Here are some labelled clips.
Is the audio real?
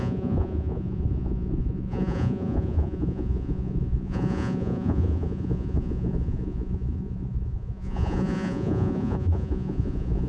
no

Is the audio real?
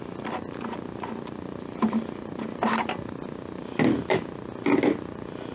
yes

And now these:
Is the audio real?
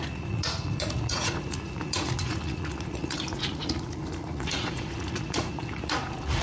no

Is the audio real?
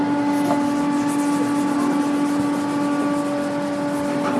yes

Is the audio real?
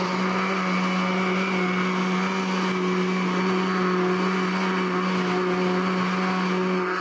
yes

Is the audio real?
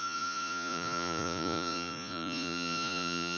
no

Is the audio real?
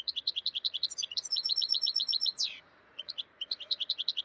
no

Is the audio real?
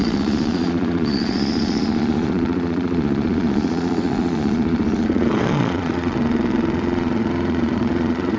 no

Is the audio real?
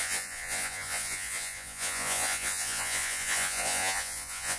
no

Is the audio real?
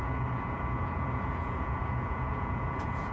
no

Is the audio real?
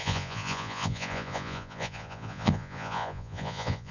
no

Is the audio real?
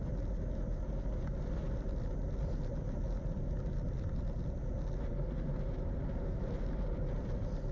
yes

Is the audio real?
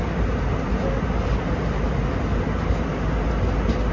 yes